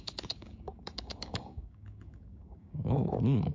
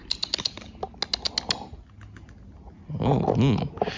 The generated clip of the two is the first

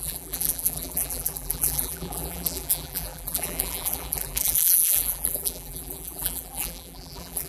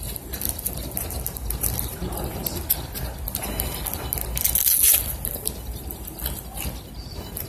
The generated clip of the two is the first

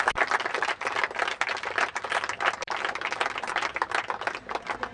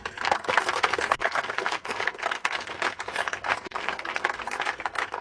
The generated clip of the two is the second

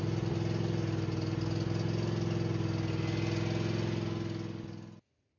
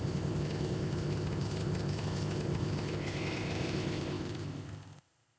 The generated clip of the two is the second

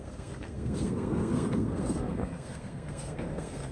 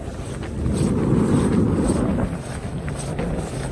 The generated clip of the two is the first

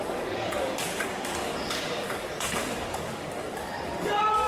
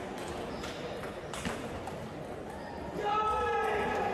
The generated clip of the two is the first